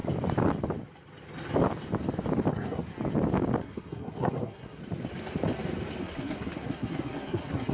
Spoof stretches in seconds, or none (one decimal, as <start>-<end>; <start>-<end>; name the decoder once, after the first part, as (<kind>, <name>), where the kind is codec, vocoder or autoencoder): 2.5-2.9 (codec, SNAC); 3.6-4.8; 6.0-7.7